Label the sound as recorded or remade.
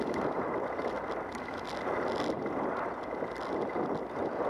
recorded